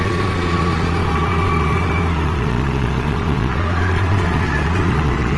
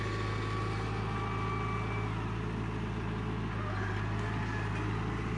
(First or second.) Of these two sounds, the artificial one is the first